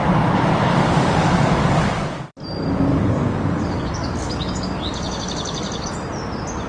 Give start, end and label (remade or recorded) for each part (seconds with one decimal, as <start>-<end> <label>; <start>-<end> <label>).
0.0-0.7 recorded; 0.7-2.4 remade; 2.4-2.9 recorded; 2.9-5.9 remade; 5.9-6.7 recorded